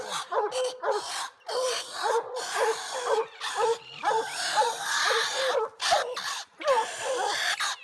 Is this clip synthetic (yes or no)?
no